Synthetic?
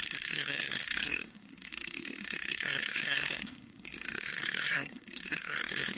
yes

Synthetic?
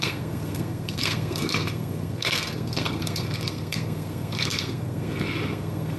yes